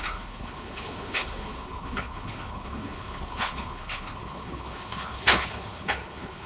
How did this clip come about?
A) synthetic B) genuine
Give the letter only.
A